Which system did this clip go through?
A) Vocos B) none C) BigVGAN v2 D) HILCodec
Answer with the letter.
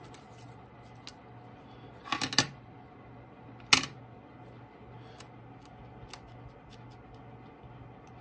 B